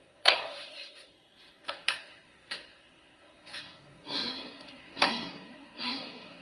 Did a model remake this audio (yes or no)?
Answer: yes